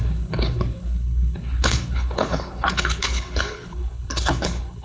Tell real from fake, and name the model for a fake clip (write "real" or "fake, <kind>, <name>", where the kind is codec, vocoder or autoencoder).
fake, codec, HILCodec